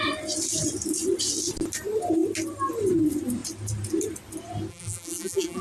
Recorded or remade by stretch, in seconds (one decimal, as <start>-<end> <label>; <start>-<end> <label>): 0.0-4.7 recorded; 4.7-5.6 remade